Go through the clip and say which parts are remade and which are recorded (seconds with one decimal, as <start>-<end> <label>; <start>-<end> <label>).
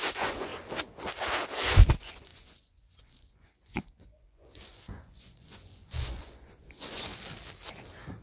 0.0-0.5 remade; 0.5-1.9 recorded; 1.9-7.1 remade; 7.1-8.2 recorded